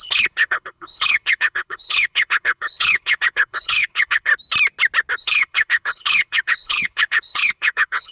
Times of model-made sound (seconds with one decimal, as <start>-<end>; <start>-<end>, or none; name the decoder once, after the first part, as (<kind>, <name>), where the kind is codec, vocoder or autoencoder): 0.0-4.3 (codec, HILCodec); 5.2-8.1